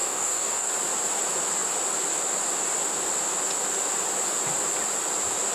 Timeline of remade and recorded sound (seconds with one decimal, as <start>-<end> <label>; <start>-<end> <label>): 0.0-0.7 remade; 0.7-5.5 recorded